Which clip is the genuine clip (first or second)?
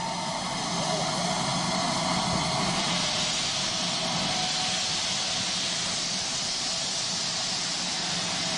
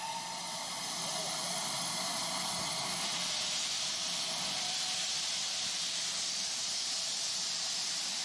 first